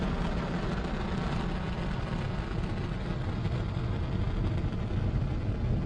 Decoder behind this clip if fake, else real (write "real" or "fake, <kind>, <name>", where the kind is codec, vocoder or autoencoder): real